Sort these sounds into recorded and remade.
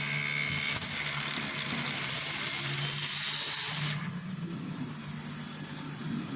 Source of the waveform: recorded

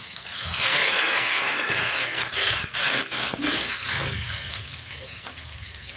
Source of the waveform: remade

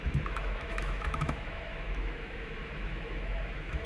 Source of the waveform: remade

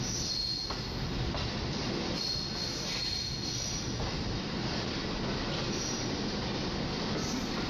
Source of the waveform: recorded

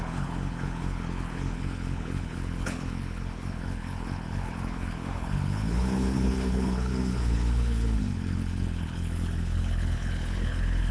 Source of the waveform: remade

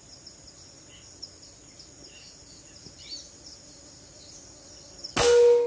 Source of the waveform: recorded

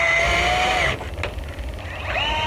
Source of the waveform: recorded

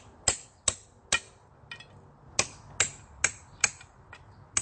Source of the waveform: recorded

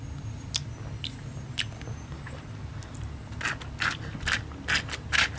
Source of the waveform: recorded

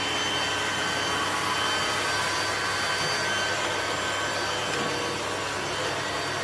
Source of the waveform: recorded